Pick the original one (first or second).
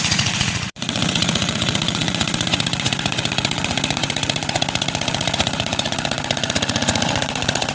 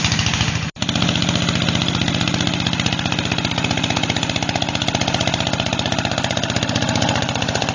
second